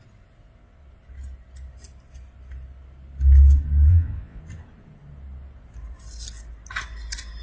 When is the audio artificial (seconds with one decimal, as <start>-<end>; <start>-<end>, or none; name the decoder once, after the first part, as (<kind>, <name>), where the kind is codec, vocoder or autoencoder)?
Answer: 3.9-4.4 (vocoder, Vocos)